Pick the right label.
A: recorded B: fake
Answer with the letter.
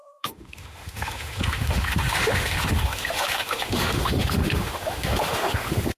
B